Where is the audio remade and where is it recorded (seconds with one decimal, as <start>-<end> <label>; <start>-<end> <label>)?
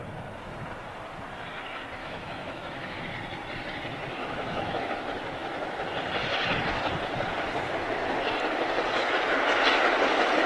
0.0-2.0 recorded; 2.0-3.0 remade; 3.0-4.2 recorded; 4.2-4.9 remade; 4.9-10.5 recorded